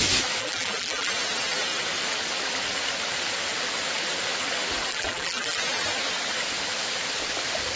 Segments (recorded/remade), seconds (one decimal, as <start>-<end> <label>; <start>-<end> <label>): 0.0-0.4 recorded; 0.4-1.1 remade; 1.1-4.9 recorded; 4.9-5.6 remade; 5.6-7.8 recorded